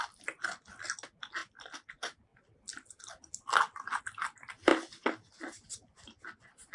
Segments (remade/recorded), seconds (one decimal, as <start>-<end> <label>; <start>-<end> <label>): 0.0-6.7 recorded